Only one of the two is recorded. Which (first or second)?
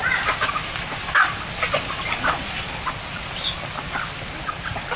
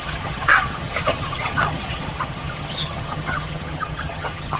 first